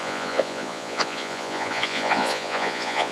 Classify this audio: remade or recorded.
remade